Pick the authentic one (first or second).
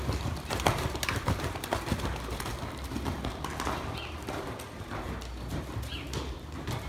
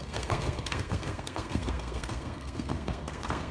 first